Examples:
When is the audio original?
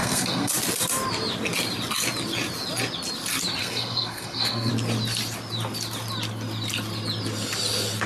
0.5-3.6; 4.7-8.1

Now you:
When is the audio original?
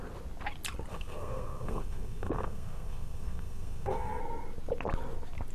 0.0-0.9; 4.2-5.5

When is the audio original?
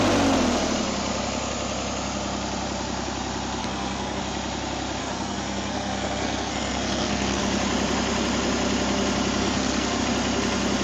0.0-3.6; 4.2-5.0; 7.4-9.4; 10.0-10.8